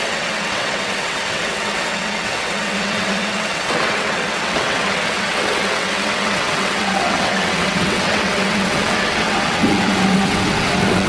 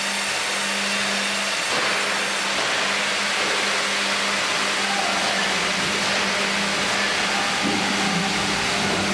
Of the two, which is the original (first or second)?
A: second